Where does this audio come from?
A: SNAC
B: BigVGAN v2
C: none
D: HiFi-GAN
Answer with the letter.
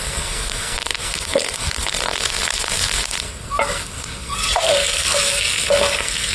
A